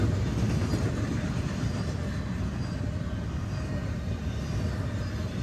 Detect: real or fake real